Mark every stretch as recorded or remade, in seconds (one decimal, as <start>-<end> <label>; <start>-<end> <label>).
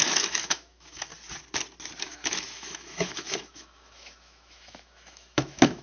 0.0-1.1 remade; 1.1-2.0 recorded; 2.0-5.8 remade